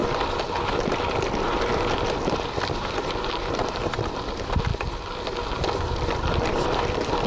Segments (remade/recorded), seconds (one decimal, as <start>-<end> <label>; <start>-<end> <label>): 0.0-7.3 recorded